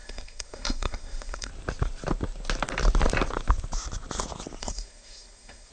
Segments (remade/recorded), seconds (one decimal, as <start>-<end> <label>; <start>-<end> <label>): 0.0-1.5 remade; 1.5-4.6 recorded; 4.6-5.7 remade